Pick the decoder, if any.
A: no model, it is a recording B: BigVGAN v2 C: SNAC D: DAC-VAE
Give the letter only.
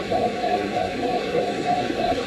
C